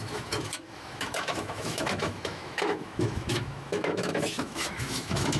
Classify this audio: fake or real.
fake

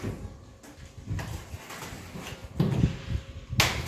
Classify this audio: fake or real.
real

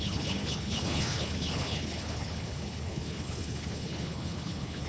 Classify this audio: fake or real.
fake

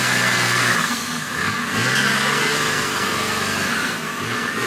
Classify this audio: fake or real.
fake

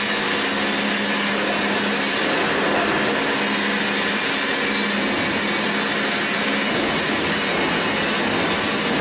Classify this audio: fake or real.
real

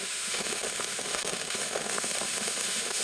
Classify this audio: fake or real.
fake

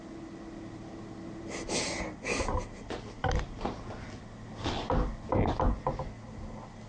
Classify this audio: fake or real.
real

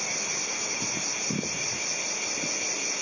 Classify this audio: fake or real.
real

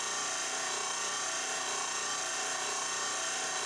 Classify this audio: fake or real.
real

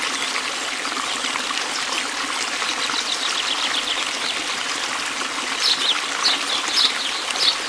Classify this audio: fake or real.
real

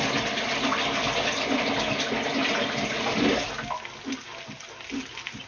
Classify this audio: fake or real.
real